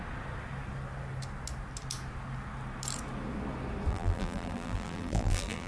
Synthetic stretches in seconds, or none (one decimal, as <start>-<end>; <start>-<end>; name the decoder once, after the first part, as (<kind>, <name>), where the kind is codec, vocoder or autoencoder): 3.9-5.7 (vocoder, BigVGAN v2)